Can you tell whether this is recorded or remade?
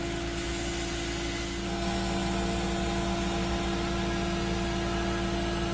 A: recorded